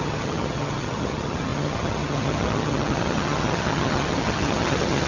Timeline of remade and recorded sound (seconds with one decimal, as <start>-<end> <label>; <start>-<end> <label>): 0.0-5.1 remade